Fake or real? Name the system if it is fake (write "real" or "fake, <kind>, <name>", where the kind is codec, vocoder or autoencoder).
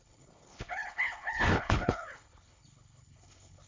fake, codec, HILCodec